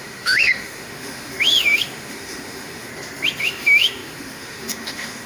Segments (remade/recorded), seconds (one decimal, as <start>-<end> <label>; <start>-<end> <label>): 0.0-2.9 remade; 2.9-3.4 recorded; 3.4-5.3 remade